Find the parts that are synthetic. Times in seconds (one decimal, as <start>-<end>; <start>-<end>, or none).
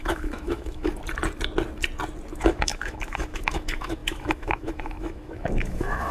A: 0.0-0.9; 2.3-6.1